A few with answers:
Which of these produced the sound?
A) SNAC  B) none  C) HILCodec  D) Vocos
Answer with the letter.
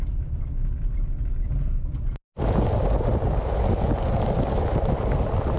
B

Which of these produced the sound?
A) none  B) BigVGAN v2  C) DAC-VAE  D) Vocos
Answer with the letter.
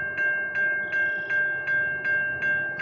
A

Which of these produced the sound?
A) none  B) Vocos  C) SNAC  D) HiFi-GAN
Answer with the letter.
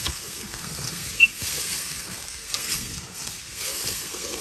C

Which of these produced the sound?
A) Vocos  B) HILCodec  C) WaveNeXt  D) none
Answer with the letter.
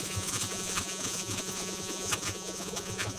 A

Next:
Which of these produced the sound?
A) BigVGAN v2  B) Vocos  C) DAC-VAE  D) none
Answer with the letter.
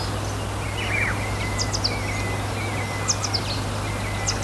D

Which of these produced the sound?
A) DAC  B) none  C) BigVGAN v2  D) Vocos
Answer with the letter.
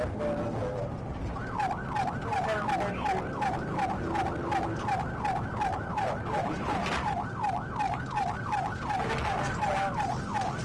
B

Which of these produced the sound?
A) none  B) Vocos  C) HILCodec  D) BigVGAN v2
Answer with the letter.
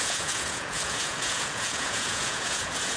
B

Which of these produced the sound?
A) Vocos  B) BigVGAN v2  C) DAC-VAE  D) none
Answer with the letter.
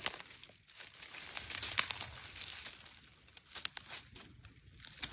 D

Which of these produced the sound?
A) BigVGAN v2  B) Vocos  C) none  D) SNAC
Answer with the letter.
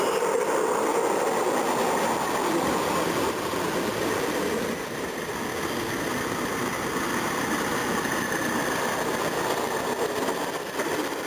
C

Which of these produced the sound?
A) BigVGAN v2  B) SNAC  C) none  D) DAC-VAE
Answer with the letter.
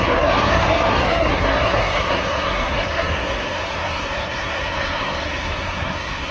B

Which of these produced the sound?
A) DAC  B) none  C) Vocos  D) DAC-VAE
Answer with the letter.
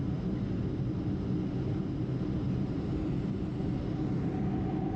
B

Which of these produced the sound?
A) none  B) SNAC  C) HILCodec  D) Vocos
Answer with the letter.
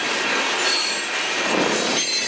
A